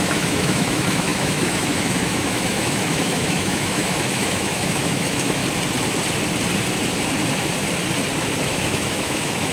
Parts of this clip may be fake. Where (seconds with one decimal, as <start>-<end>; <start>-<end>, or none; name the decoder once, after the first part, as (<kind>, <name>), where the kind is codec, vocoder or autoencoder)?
0.0-5.4 (autoencoder, DAC-VAE); 8.5-9.5